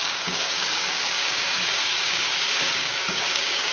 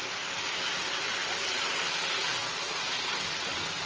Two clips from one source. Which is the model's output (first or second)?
first